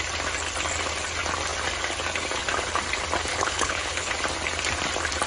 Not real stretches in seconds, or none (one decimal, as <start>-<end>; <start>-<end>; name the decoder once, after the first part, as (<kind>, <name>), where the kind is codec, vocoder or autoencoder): 3.3-4.1 (codec, HILCodec)